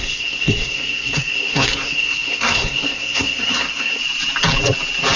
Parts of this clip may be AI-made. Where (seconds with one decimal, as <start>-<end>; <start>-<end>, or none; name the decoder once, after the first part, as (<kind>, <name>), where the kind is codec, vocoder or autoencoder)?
0.0-4.0 (codec, SNAC)